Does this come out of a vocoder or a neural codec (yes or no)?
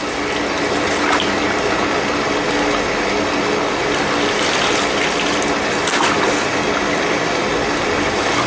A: no